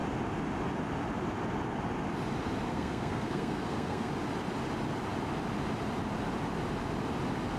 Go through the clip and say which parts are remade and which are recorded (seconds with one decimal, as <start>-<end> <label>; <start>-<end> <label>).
0.0-2.7 recorded; 2.7-4.1 remade; 4.1-7.6 recorded